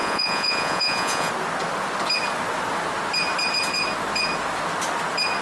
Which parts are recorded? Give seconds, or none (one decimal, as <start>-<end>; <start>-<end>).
1.3-5.4